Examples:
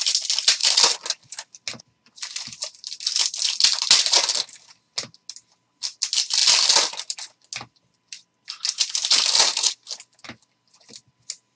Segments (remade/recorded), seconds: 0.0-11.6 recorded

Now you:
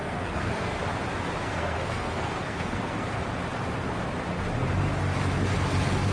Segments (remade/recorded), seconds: 0.0-0.8 remade; 0.8-1.4 recorded; 1.4-3.1 remade; 3.1-6.1 recorded

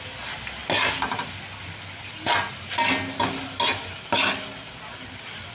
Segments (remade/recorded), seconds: 0.0-5.5 recorded

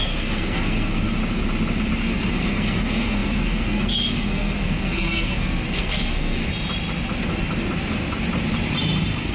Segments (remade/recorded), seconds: 0.0-1.2 remade; 1.2-2.0 recorded; 2.0-6.4 remade; 6.4-9.3 recorded

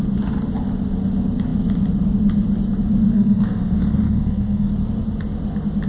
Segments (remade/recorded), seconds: 0.0-3.1 recorded; 3.1-4.7 remade; 4.7-5.9 recorded